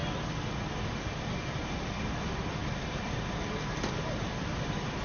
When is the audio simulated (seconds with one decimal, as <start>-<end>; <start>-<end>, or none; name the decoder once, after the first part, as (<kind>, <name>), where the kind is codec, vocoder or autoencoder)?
0.7-3.7 (vocoder, BigVGAN v2); 4.2-5.0